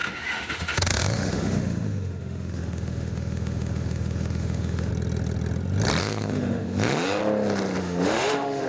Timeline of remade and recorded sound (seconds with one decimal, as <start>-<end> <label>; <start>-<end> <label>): 0.0-4.9 remade; 4.9-6.0 recorded; 6.0-7.2 remade; 7.2-7.8 recorded; 7.8-8.7 remade